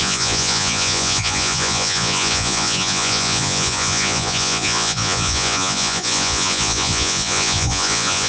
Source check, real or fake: fake